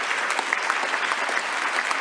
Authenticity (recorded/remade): recorded